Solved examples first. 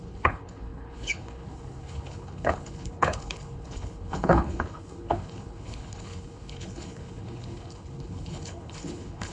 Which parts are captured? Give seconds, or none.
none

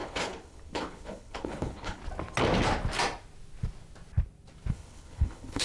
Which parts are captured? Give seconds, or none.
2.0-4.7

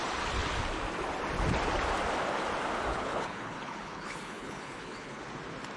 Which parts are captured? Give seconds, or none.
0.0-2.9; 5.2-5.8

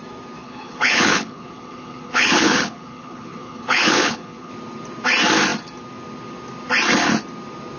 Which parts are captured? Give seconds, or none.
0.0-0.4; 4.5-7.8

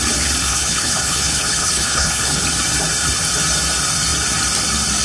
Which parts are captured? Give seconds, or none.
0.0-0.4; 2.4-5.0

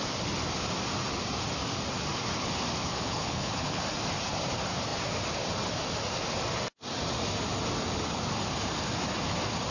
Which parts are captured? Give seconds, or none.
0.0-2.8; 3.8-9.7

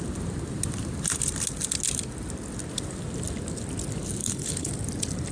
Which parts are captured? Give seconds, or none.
0.0-4.2; 4.7-5.3